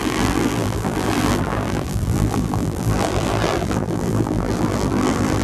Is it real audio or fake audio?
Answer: fake